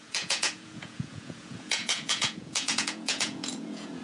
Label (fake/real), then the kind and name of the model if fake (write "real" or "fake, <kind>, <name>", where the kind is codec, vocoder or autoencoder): fake, vocoder, Vocos